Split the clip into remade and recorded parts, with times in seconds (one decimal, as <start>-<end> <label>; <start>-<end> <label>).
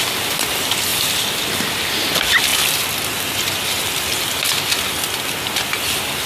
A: 0.0-6.3 recorded